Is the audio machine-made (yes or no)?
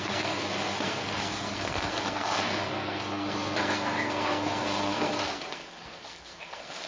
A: yes